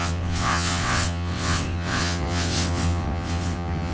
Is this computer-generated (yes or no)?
yes